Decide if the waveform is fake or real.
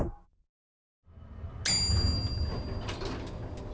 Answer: real